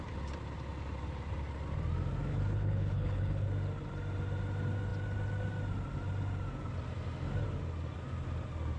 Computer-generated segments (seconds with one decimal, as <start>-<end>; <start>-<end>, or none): 2.3-3.5